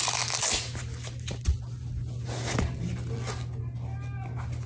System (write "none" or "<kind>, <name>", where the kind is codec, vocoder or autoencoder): none